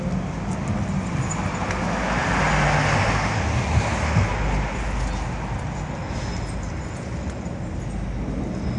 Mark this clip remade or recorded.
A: recorded